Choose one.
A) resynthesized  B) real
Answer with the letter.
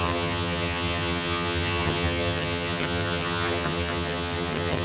A